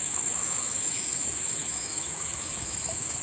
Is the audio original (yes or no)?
no